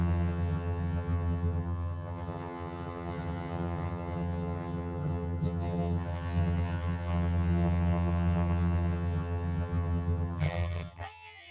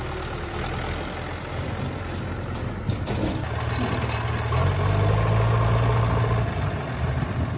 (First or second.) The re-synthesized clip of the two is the first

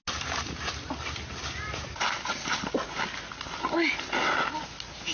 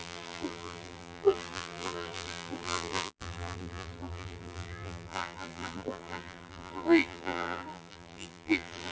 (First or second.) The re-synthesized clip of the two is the second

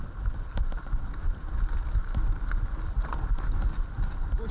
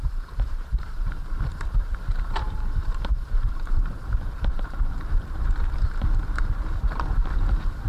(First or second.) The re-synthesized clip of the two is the second